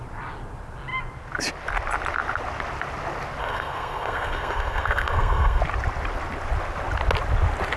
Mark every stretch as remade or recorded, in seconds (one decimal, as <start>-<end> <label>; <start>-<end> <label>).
0.0-3.4 recorded; 3.4-5.6 remade; 5.6-7.8 recorded